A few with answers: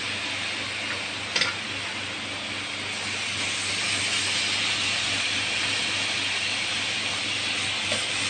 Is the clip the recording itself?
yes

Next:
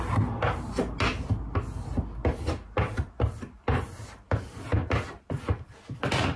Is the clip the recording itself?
yes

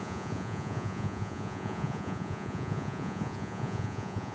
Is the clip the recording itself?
no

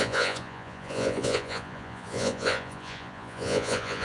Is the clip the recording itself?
no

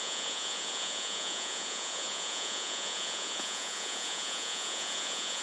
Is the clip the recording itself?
no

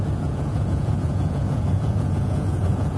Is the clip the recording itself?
no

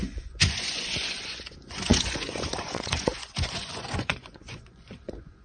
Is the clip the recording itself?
no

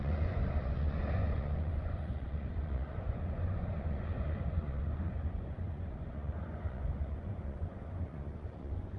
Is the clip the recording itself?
no